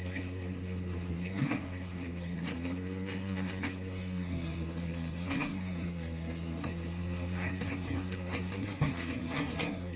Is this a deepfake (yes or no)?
yes